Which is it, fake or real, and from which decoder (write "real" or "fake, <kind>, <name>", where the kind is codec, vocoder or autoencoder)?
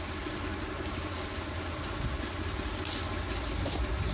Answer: real